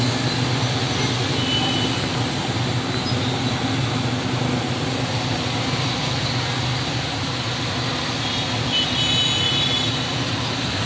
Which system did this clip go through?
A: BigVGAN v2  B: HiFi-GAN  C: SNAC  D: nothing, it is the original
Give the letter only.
D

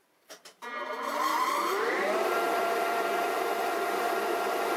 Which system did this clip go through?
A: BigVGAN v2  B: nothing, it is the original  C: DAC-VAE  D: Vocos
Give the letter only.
A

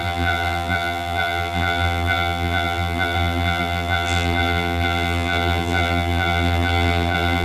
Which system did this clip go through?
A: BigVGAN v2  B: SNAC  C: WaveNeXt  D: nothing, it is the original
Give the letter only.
A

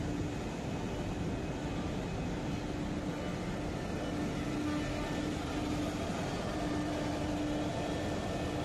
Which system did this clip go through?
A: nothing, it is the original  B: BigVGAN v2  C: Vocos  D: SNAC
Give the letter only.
A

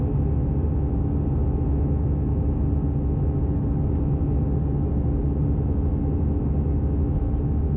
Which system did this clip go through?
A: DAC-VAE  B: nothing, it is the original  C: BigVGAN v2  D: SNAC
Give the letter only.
B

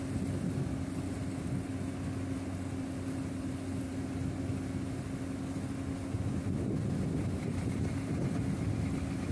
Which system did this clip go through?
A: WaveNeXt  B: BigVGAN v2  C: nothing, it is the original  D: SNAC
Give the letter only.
C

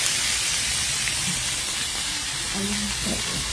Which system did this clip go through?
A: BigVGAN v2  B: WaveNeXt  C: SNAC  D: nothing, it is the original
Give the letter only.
A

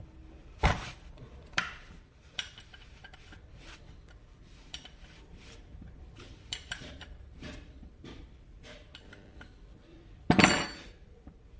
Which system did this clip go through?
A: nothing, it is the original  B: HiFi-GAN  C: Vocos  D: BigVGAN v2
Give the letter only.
D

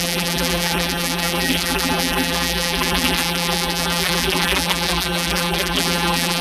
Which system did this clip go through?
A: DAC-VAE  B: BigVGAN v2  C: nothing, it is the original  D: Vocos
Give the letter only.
B